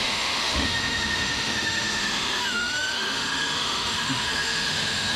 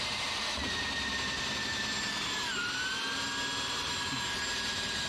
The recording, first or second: second